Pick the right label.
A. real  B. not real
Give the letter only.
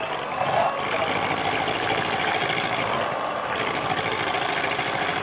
A